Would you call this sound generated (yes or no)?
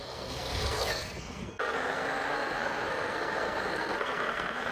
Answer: yes